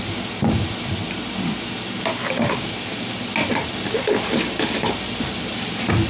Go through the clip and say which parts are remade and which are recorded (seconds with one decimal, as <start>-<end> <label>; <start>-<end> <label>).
0.0-2.2 recorded; 2.2-2.7 remade; 2.7-6.1 recorded